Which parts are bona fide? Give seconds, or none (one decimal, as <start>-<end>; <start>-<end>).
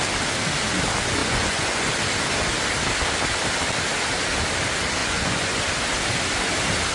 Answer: 0.0-1.2; 1.9-5.0; 5.6-6.9